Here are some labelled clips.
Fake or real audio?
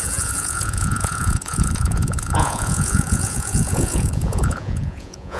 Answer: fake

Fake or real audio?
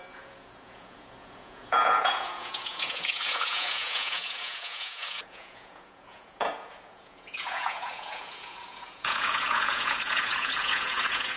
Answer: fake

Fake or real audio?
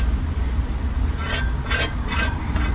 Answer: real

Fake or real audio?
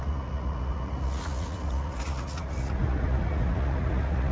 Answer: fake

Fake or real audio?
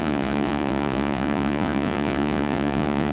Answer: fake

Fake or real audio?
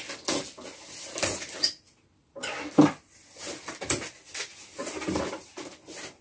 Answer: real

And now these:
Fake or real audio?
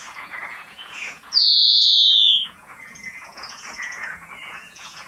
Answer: fake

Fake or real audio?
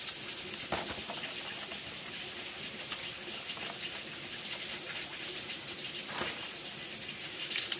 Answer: real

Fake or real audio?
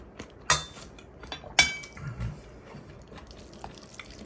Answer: real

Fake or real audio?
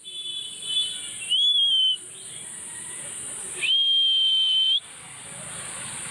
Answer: real